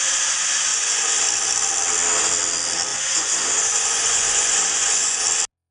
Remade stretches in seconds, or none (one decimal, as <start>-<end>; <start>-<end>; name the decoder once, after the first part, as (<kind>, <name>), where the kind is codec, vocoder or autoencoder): 0.7-1.2 (vocoder, Vocos); 2.9-5.2